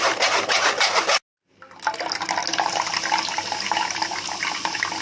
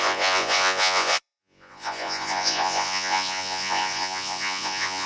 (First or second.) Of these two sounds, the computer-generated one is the second